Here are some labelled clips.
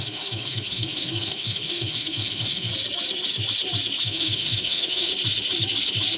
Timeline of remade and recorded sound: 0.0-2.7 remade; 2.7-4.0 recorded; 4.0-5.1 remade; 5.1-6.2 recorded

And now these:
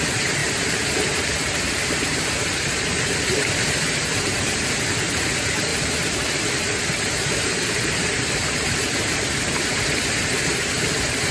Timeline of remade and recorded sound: 0.0-11.3 remade

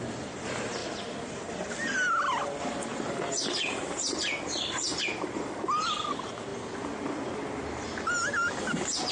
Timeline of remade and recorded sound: 0.0-9.1 recorded

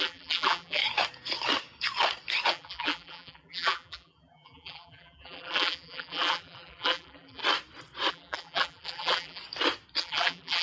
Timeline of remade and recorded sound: 0.0-0.8 remade; 0.8-2.5 recorded; 2.5-7.4 remade; 7.4-8.1 recorded; 8.1-9.4 remade; 9.4-10.0 recorded; 10.0-10.6 remade

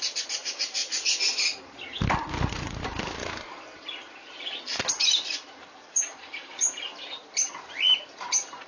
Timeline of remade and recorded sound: 0.0-0.8 remade; 0.8-2.5 recorded; 2.5-3.2 remade; 3.2-4.9 recorded; 4.9-8.7 remade

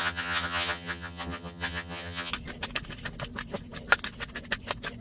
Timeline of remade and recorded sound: 0.0-2.3 remade; 2.3-5.0 recorded

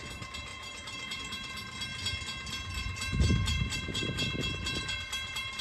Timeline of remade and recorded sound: 0.0-5.6 recorded